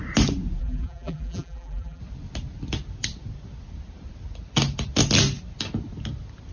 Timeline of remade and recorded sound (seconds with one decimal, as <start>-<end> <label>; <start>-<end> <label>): 0.0-0.6 recorded; 0.6-2.0 remade; 2.0-6.5 recorded